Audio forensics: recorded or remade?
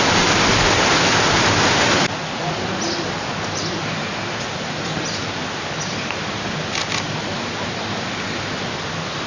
recorded